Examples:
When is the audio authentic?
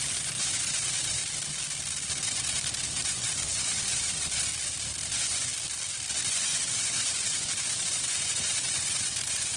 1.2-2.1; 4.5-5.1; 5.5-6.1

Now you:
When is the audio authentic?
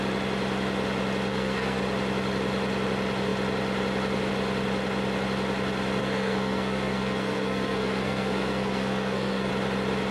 0.0-1.3; 1.8-6.0; 9.5-10.1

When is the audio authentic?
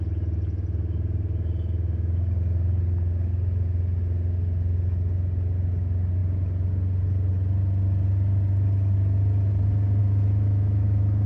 0.0-10.0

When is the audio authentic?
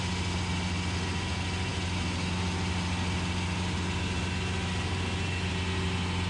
0.0-6.3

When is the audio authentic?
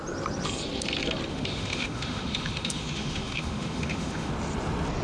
0.0-1.3; 4.3-5.0